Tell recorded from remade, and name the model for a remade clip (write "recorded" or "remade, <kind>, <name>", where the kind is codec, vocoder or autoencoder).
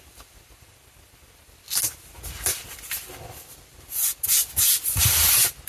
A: recorded